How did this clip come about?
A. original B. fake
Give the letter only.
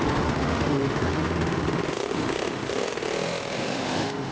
B